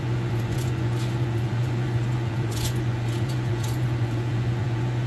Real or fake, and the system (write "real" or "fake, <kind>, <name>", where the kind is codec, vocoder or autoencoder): fake, vocoder, Vocos